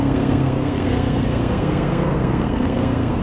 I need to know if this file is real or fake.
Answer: fake